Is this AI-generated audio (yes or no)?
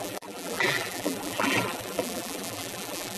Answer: yes